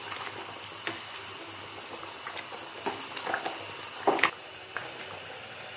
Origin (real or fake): real